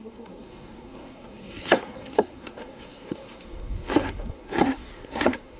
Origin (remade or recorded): remade